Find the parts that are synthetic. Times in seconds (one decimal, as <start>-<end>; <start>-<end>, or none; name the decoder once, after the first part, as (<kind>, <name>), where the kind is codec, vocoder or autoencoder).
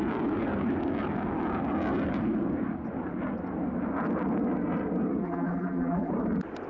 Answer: 5.2-6.1 (vocoder, BigVGAN v2)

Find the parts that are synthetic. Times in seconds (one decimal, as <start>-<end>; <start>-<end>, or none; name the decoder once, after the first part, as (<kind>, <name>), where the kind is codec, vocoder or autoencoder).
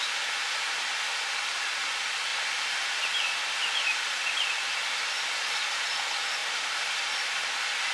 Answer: 0.0-7.9 (vocoder, BigVGAN v2)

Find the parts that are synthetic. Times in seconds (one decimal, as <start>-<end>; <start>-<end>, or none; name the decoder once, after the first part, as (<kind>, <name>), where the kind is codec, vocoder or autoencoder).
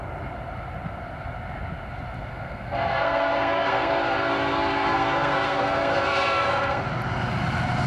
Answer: 2.3-6.8 (codec, SNAC)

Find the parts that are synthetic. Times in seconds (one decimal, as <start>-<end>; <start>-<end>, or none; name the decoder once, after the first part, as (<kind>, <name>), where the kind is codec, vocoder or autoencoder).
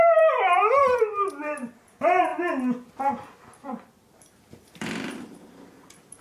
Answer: 0.0-0.8 (vocoder, BigVGAN v2); 1.4-2.3; 4.2-6.2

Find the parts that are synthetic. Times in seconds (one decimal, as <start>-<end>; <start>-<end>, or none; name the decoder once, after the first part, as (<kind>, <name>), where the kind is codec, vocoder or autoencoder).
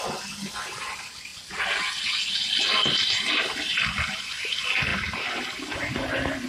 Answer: none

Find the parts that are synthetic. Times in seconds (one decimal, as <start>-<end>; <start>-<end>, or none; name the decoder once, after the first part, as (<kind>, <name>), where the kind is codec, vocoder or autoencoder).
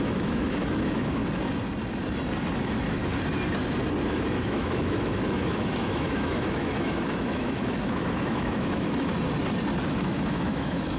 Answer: 0.0-1.2 (autoencoder, DAC-VAE); 2.6-3.0; 4.1-9.1; 9.9-11.0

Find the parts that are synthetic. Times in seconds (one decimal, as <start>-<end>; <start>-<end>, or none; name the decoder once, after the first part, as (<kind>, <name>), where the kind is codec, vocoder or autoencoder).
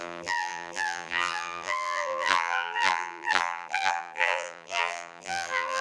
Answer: 0.0-5.8 (vocoder, BigVGAN v2)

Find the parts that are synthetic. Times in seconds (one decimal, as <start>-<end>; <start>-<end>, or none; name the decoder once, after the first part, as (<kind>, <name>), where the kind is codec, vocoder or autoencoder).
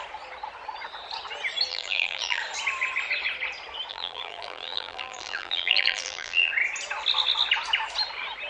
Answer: 1.7-2.4 (vocoder, BigVGAN v2); 3.9-6.5